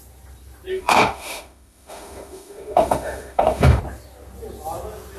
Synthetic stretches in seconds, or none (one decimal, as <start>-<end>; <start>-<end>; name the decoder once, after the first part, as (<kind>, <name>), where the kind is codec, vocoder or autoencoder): 0.7-3.8 (autoencoder, DAC-VAE)